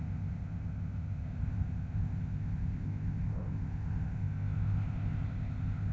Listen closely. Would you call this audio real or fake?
fake